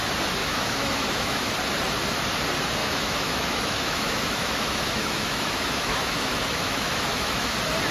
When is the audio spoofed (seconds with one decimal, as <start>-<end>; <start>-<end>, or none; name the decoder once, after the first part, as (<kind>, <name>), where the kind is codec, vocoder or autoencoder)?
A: 0.4-1.5 (autoencoder, DAC-VAE); 2.8-7.5